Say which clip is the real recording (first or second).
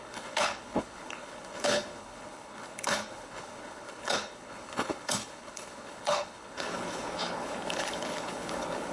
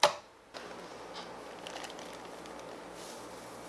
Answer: second